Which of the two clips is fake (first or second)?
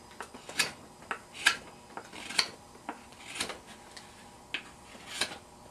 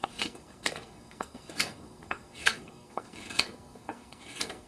second